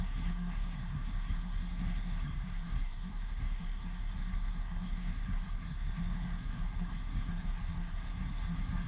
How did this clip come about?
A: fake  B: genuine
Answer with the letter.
A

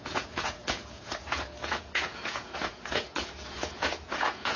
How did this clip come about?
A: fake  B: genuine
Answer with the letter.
A